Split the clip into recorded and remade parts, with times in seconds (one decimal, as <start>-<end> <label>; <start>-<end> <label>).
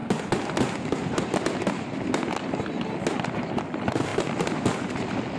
0.0-5.4 recorded